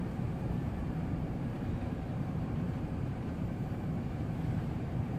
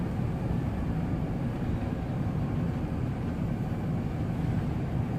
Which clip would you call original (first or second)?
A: second